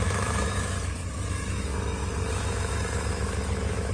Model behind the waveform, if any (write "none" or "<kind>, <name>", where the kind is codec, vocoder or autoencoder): autoencoder, DAC-VAE